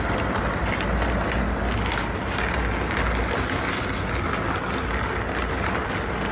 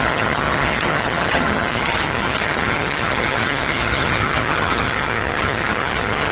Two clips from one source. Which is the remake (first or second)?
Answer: second